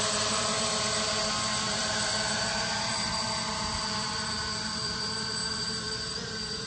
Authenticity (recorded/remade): remade